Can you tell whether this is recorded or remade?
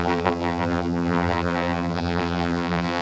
remade